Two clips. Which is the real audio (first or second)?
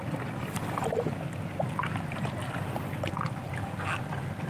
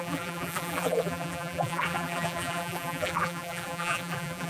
first